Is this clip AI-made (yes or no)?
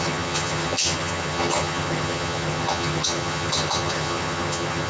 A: yes